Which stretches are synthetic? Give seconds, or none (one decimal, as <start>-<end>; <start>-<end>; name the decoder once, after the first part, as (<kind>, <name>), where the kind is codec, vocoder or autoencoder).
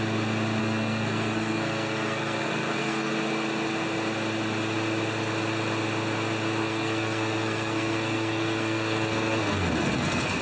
0.6-3.1 (codec, SNAC); 6.6-10.4